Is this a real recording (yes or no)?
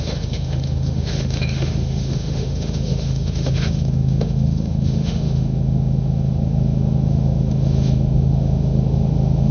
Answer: no